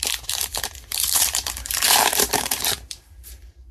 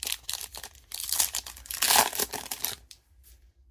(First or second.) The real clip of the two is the second